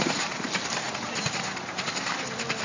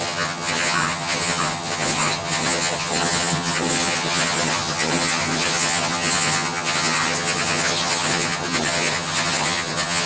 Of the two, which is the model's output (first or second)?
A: second